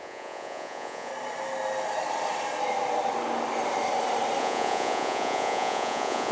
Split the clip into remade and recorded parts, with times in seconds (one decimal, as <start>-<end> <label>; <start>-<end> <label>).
0.0-1.1 remade; 1.1-4.4 recorded; 4.4-6.3 remade